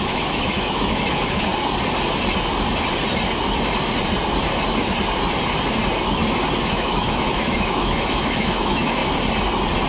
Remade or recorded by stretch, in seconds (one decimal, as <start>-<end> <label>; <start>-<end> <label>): 0.0-1.5 remade; 1.5-6.6 recorded; 6.6-9.0 remade; 9.0-9.9 recorded